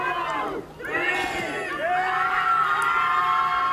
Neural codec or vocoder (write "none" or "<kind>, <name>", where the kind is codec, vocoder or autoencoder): none